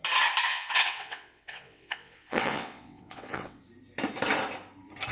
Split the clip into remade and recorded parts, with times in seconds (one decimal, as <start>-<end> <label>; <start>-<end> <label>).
0.0-0.5 recorded; 0.5-3.6 remade; 3.6-5.1 recorded